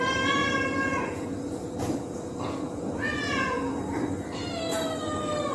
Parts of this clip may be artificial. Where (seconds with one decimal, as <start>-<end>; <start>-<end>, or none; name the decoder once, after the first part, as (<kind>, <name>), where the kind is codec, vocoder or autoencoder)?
0.4-3.7 (vocoder, Vocos)